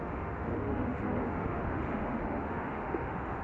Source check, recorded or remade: remade